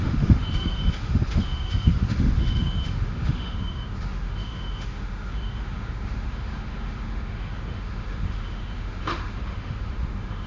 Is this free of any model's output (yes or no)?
no